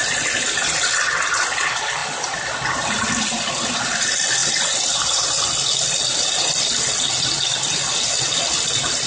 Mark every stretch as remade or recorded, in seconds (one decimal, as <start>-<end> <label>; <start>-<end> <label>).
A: 0.0-9.1 recorded